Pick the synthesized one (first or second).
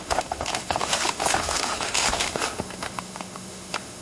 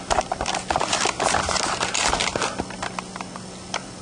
first